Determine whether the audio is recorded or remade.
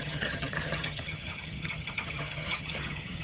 remade